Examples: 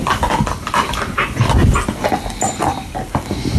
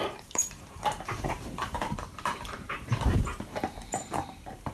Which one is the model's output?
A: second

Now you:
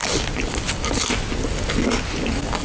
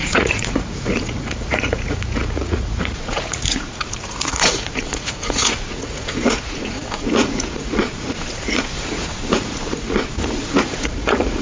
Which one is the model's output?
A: second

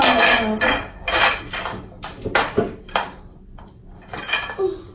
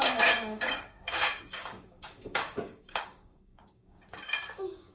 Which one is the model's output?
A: second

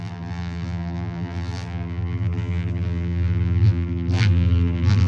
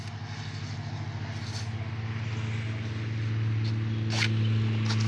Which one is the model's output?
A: first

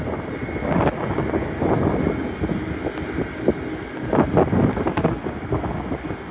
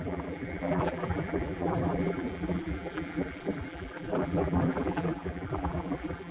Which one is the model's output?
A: second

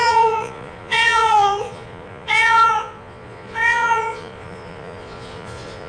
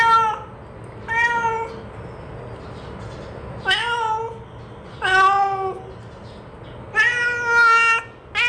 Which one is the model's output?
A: first